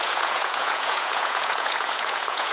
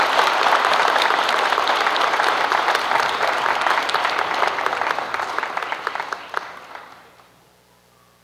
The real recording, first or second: second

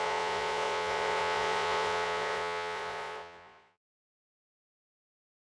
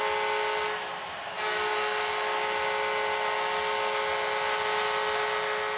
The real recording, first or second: second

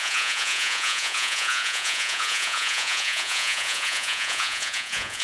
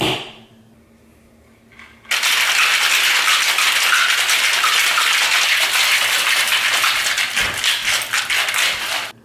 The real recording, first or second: second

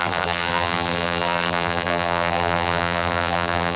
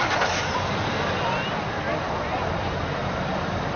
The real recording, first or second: second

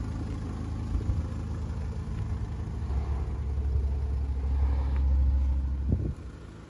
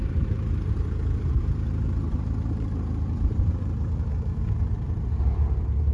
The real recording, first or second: first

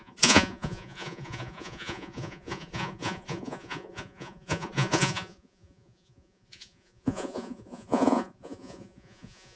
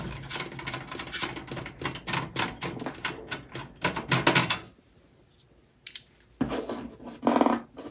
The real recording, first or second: second